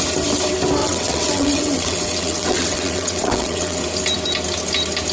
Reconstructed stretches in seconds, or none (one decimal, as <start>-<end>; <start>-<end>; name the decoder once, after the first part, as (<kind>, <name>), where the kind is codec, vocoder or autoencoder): 0.8-3.8 (vocoder, WaveNeXt)